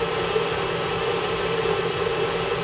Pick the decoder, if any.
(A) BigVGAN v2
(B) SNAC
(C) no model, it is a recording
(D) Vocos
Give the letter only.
C